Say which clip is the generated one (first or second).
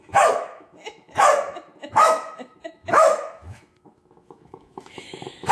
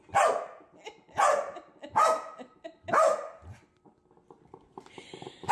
first